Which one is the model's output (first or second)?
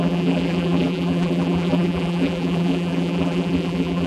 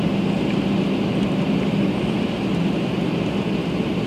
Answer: first